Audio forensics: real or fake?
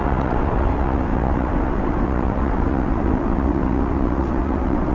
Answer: fake